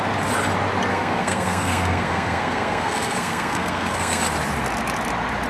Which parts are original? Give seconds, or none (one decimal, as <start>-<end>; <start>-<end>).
0.0-0.9; 4.2-5.5